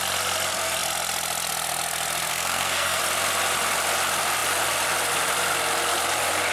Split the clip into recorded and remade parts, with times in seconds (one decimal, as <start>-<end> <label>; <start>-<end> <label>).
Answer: 0.0-2.3 recorded; 2.3-3.0 remade; 3.0-6.5 recorded